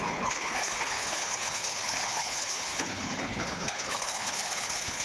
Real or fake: fake